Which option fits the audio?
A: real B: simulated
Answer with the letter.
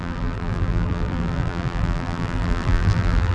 B